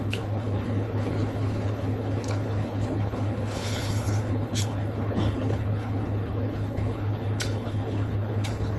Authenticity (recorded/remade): remade